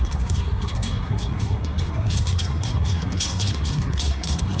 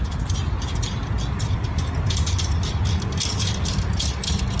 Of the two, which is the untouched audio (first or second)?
second